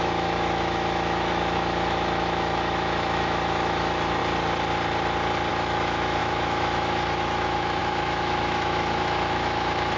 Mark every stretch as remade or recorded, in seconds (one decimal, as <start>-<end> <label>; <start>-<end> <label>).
0.0-4.2 remade; 4.2-5.5 recorded; 5.5-10.0 remade